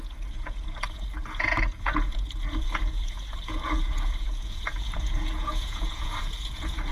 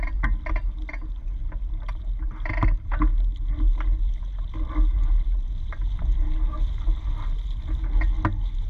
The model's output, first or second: first